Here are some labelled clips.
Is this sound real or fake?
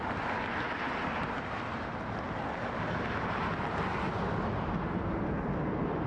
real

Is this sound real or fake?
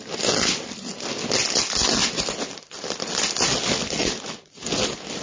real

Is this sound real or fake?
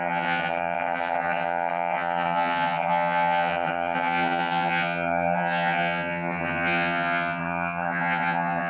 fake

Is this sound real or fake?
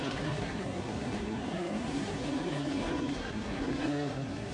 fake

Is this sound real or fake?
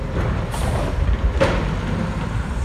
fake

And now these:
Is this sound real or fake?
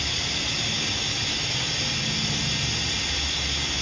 real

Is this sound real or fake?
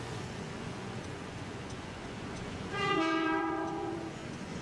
fake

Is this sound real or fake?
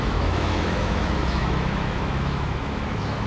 fake